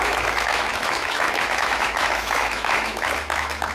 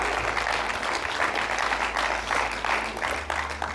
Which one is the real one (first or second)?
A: second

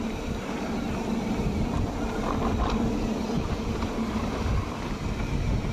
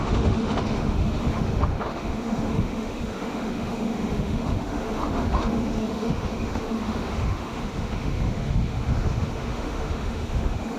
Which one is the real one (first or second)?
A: first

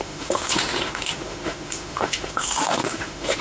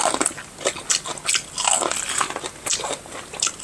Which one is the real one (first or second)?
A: second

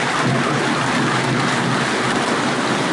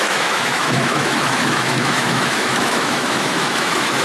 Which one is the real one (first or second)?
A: first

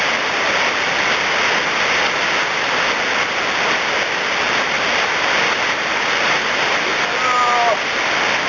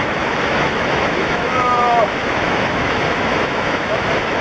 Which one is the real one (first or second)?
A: first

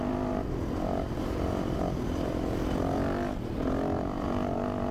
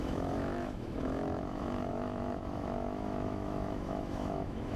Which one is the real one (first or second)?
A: first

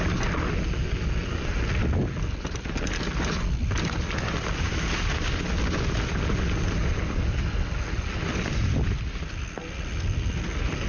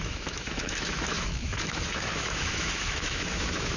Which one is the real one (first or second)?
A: first